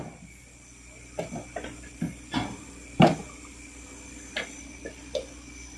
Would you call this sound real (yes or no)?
yes